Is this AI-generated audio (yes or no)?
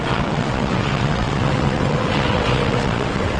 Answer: yes